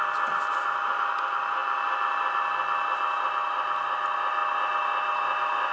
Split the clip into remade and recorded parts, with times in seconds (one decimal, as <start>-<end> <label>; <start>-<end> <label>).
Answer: 0.0-5.7 recorded